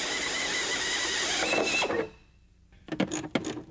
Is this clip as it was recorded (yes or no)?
yes